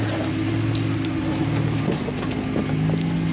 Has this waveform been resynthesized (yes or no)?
no